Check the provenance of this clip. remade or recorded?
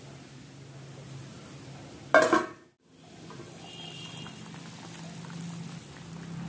recorded